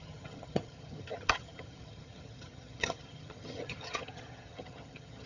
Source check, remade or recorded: remade